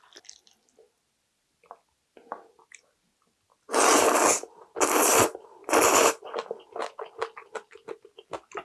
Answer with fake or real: real